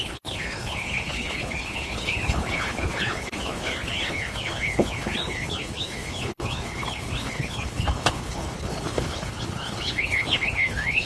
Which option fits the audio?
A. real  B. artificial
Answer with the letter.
B